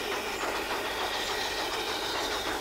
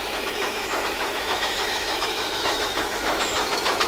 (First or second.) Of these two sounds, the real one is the first